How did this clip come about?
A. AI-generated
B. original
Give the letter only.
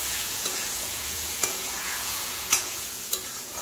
A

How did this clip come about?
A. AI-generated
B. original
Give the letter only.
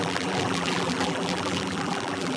A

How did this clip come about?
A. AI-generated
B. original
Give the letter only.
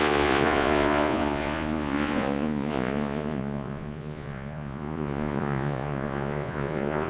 A